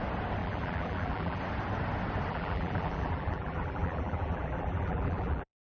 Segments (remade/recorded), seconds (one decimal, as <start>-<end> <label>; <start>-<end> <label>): 0.0-0.4 recorded; 0.4-1.4 remade; 1.4-2.3 recorded; 2.3-5.7 remade